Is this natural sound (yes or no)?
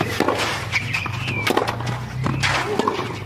yes